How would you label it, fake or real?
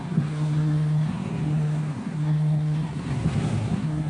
fake